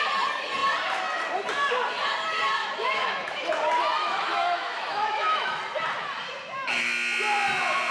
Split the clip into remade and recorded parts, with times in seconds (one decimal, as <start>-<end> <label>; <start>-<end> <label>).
0.0-2.6 recorded; 2.6-3.5 remade; 3.5-4.0 recorded; 4.0-5.6 remade; 5.6-7.9 recorded